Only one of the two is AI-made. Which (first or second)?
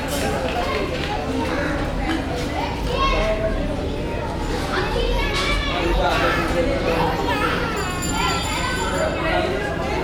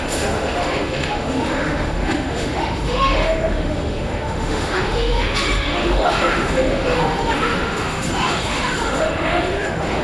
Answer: second